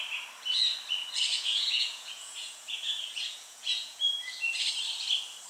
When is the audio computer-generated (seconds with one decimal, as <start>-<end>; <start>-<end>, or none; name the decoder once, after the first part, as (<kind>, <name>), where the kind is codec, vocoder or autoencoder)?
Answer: 1.3-4.6 (vocoder, Vocos)

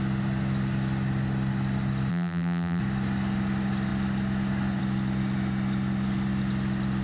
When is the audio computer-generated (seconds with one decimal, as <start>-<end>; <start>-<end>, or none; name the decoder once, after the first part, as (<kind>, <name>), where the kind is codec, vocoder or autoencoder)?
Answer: 2.1-2.8 (vocoder, BigVGAN v2)

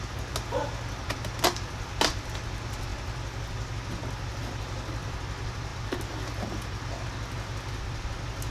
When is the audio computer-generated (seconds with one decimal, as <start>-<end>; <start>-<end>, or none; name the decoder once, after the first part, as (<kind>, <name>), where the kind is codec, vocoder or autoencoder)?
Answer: none

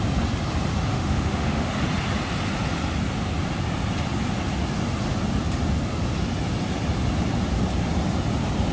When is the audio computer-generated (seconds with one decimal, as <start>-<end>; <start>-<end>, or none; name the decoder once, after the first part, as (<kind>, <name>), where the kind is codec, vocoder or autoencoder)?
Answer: 0.9-1.7 (autoencoder, DAC-VAE)

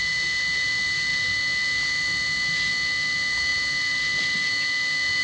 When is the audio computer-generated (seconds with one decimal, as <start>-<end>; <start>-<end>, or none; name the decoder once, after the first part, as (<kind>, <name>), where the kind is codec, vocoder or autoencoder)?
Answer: none

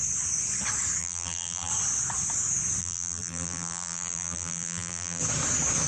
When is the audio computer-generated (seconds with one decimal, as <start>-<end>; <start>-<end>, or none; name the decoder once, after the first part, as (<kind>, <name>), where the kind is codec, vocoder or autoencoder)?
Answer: 1.0-1.7 (vocoder, BigVGAN v2); 2.8-5.2

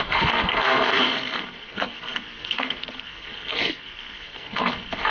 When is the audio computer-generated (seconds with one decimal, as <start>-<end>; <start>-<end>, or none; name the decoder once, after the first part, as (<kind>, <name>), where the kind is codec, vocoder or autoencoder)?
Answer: 0.0-5.1 (codec, SNAC)